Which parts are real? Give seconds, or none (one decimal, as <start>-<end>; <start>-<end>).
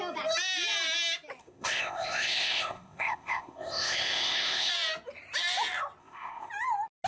0.0-1.4; 4.7-6.0; 6.5-7.1